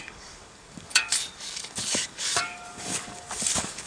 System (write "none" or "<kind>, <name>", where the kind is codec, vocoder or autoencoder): codec, DAC